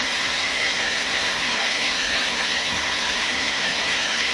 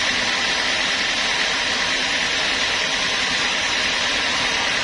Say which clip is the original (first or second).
second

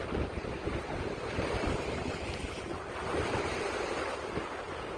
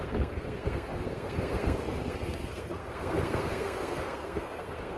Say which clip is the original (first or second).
first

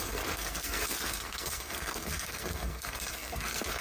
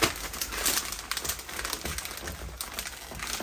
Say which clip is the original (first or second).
second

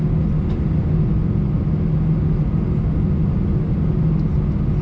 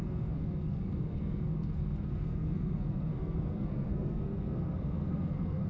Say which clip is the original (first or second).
first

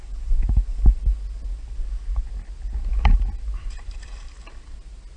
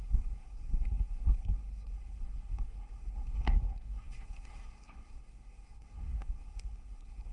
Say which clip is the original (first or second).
first